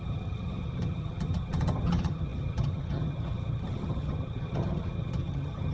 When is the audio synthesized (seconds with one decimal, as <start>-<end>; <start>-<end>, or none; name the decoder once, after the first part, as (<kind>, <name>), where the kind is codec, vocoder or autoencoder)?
0.0-5.7 (vocoder, HiFi-GAN)